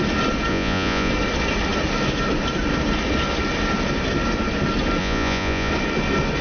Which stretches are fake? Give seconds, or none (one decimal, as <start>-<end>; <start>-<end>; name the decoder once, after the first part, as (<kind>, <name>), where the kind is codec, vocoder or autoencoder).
0.5-1.1 (vocoder, Vocos); 5.0-5.7